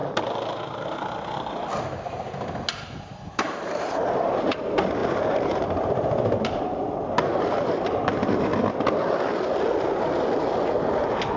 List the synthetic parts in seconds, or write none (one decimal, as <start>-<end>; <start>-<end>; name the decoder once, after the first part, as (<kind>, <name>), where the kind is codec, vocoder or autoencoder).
3.3-8.5 (vocoder, BigVGAN v2)

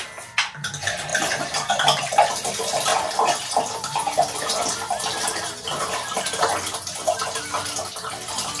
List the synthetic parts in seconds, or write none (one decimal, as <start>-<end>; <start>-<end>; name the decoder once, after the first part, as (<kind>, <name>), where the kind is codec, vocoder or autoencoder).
1.1-1.7 (vocoder, BigVGAN v2)